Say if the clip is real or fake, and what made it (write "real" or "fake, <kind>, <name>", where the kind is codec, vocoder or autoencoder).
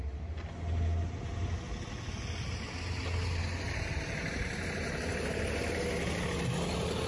real